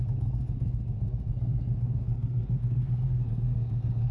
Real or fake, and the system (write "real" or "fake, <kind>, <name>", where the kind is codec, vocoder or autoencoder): fake, codec, SNAC